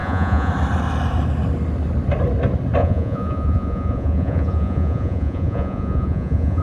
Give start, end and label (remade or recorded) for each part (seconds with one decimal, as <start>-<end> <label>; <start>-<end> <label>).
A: 0.0-0.5 remade; 0.5-2.8 recorded; 2.8-6.6 remade